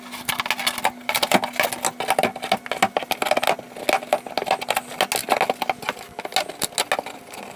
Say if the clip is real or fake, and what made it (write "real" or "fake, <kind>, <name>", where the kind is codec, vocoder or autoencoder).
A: real